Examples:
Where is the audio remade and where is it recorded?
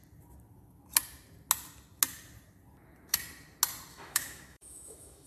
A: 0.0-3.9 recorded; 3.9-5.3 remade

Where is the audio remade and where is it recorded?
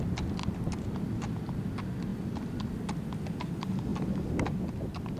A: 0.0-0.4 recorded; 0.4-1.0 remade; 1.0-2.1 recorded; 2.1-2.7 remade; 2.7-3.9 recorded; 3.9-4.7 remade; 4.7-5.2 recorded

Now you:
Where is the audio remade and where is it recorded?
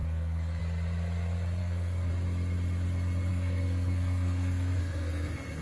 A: 0.0-0.6 remade; 0.6-1.6 recorded; 1.6-2.1 remade; 2.1-3.3 recorded; 3.3-5.6 remade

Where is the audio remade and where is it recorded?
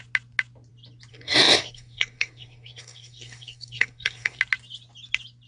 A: 0.0-1.1 recorded; 1.1-4.4 remade; 4.4-5.5 recorded